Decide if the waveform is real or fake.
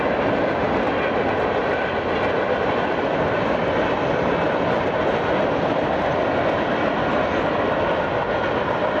real